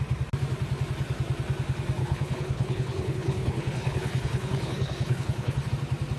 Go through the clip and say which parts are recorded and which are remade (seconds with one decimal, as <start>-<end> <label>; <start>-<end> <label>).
0.0-2.0 recorded; 2.0-5.7 remade; 5.7-6.2 recorded